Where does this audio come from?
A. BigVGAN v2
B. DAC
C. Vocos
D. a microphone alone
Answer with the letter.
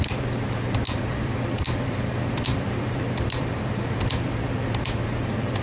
A